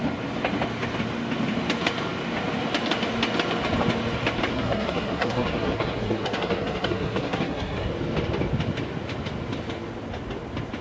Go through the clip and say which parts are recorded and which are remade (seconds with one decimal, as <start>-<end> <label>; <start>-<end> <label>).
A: 0.0-4.5 recorded; 4.5-7.9 remade; 7.9-10.8 recorded